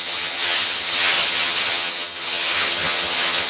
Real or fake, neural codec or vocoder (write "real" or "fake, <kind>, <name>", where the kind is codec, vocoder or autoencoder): fake, vocoder, HiFi-GAN